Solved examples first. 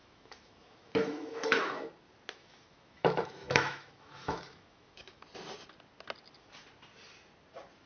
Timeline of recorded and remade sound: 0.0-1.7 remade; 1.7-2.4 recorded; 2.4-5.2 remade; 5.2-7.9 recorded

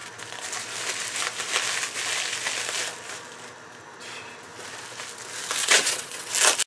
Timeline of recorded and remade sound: 0.0-5.6 recorded; 5.6-6.3 remade; 6.3-6.7 recorded

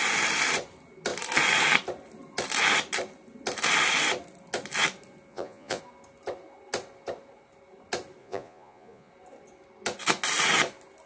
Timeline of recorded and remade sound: 0.0-5.3 recorded; 5.3-5.8 remade; 5.8-8.2 recorded; 8.2-9.1 remade; 9.1-11.1 recorded